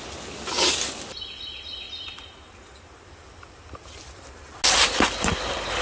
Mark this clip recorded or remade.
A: recorded